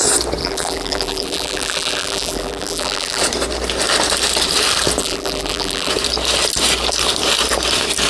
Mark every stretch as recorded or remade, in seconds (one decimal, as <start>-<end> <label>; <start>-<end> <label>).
0.0-0.4 recorded; 0.4-3.2 remade; 3.2-5.0 recorded; 5.0-5.9 remade; 5.9-8.1 recorded